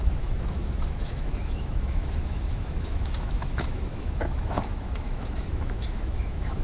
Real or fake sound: fake